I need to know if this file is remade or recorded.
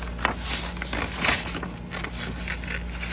recorded